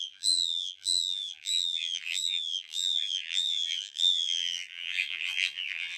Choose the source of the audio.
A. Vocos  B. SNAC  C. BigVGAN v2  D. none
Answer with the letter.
C